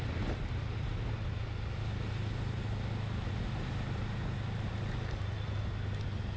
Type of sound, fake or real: real